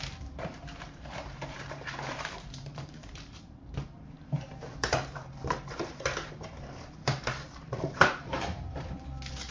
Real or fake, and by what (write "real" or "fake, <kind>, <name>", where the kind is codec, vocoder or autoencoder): fake, vocoder, BigVGAN v2